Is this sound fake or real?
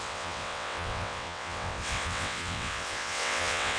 fake